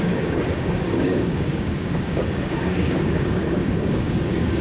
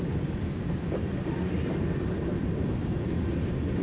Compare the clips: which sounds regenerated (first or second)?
first